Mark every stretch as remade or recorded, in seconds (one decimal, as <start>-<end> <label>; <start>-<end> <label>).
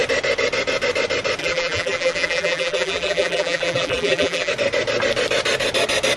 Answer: 0.0-1.4 recorded; 1.4-4.5 remade; 4.5-6.2 recorded